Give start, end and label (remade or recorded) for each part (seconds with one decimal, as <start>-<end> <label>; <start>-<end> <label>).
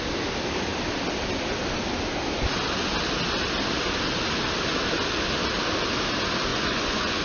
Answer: 0.0-6.5 recorded; 6.5-7.2 remade